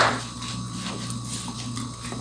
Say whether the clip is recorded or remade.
recorded